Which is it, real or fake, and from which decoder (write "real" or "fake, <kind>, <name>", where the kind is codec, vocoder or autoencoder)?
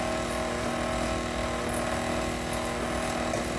real